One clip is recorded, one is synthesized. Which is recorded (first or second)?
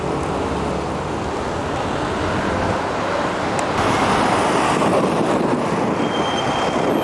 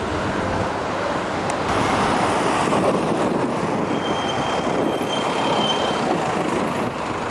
first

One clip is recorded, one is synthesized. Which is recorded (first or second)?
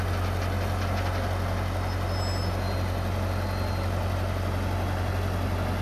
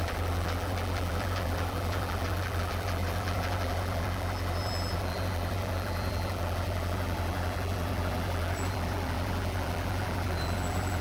first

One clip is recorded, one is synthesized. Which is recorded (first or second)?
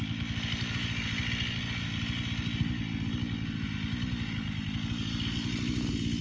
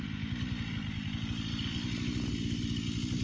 first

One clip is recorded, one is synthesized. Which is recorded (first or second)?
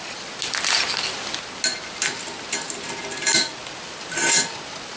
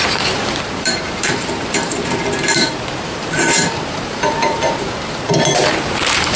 first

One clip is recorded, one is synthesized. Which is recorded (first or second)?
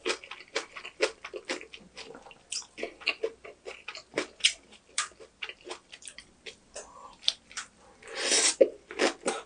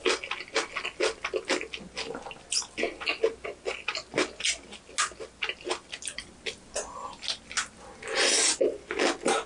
second